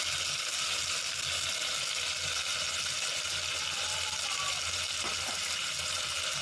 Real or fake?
real